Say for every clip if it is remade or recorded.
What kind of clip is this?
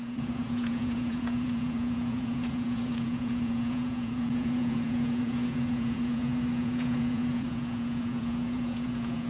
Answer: remade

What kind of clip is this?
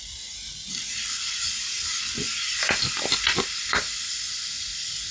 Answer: recorded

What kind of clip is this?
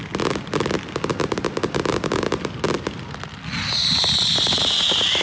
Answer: recorded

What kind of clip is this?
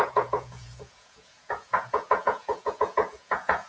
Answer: remade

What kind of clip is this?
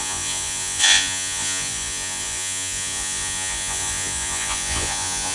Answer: remade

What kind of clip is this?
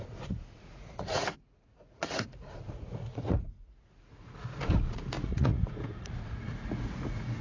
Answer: remade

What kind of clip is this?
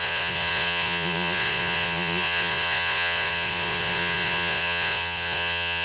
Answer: remade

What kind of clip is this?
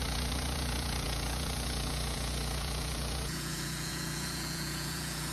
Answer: remade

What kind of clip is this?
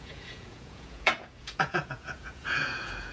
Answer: remade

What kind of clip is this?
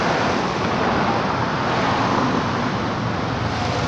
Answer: recorded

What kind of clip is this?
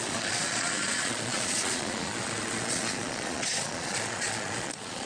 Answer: remade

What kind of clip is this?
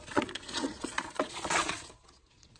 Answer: remade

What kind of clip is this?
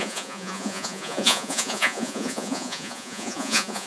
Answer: remade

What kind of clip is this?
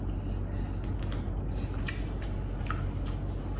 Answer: recorded